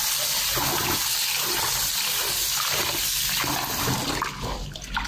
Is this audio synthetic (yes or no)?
no